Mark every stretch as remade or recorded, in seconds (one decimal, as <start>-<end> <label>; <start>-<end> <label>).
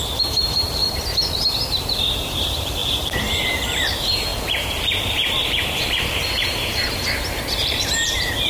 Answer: 0.0-0.8 remade; 0.8-2.4 recorded; 2.4-8.5 remade